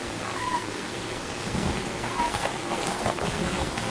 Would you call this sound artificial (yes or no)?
yes